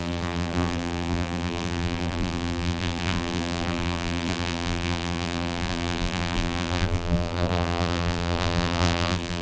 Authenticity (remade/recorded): remade